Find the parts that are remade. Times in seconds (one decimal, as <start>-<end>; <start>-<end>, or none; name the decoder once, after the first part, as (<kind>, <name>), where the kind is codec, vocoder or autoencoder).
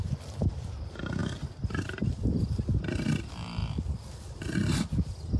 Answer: 1.2-2.4 (vocoder, BigVGAN v2); 3.6-4.9